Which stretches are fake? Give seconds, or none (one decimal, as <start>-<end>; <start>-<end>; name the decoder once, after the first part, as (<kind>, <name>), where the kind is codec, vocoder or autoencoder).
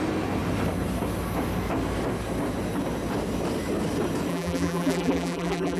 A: 4.3-5.8 (vocoder, BigVGAN v2)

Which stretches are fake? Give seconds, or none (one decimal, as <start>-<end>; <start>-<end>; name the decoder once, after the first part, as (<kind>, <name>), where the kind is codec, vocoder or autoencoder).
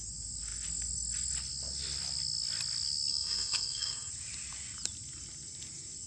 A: 3.1-4.1 (codec, SNAC)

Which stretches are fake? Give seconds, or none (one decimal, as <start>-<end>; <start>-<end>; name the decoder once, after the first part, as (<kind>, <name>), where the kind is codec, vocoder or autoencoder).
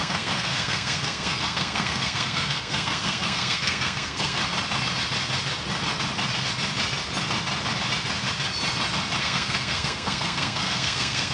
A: 0.0-4.4 (codec, SNAC); 9.2-11.3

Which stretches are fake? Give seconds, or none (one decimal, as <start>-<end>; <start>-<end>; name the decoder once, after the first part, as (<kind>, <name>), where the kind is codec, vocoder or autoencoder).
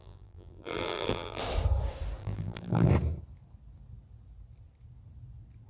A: 0.0-1.4 (vocoder, BigVGAN v2); 2.2-2.9